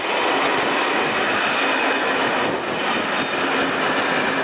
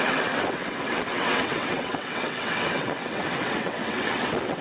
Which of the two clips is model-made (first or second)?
second